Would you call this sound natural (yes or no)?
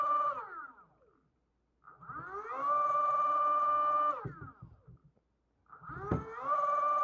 yes